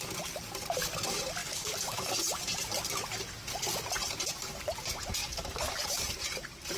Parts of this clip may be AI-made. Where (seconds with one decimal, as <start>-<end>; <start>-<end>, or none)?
1.4-2.1; 5.2-6.0